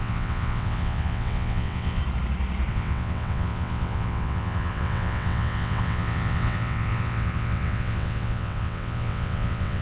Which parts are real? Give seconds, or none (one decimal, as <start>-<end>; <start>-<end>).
2.0-2.7